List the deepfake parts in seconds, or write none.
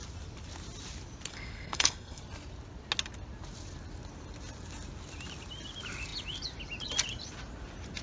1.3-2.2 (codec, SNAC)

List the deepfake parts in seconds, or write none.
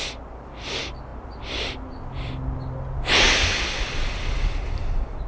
none